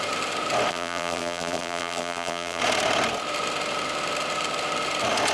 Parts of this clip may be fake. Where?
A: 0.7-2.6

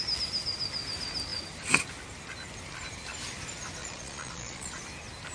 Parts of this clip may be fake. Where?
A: 3.8-4.8

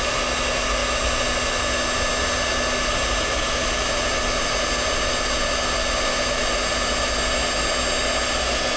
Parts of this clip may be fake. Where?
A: none